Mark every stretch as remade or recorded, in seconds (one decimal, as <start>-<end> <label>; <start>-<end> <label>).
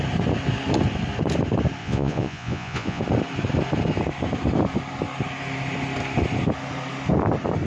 0.0-1.8 recorded; 1.8-3.0 remade; 3.0-7.7 recorded